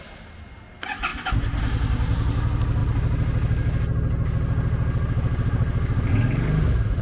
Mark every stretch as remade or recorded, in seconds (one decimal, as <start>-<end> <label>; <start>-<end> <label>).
0.0-7.0 recorded